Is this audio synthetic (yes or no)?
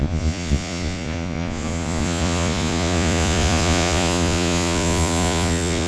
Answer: yes